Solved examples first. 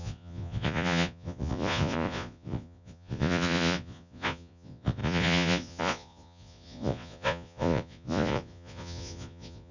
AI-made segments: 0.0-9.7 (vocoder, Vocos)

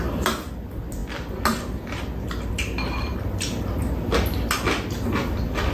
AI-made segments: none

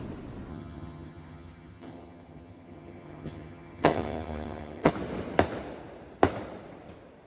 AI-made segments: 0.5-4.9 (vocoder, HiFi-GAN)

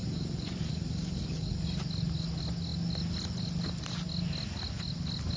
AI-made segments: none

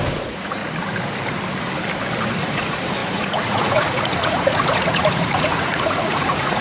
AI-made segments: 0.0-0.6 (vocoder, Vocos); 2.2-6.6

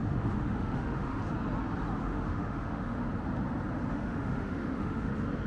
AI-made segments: 0.0-1.2 (autoencoder, DAC-VAE); 2.0-3.0; 3.9-5.1